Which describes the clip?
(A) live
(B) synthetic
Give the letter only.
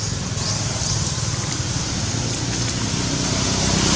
A